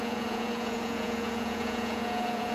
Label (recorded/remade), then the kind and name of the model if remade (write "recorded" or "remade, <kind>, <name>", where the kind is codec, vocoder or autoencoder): remade, vocoder, Vocos